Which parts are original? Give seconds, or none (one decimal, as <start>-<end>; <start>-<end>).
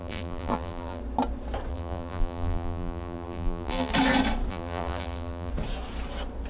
1.0-1.7; 3.9-4.5; 5.5-6.5